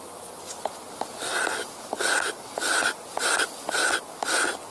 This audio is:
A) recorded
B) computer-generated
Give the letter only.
A